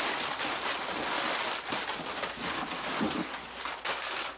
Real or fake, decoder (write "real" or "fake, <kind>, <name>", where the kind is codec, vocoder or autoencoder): real